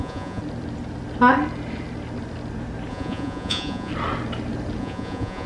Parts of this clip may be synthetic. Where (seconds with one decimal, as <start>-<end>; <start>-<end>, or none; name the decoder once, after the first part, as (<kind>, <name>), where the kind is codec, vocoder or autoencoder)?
0.0-0.4 (vocoder, Vocos); 2.9-3.9; 4.8-5.5